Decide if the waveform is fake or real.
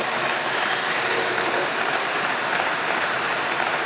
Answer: fake